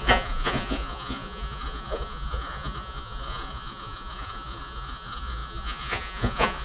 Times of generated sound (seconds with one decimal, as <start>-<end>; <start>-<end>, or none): 0.0-6.6